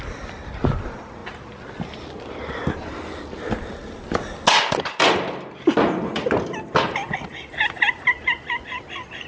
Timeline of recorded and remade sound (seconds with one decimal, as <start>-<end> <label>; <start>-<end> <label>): 0.0-9.3 recorded